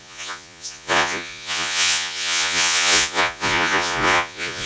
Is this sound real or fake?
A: fake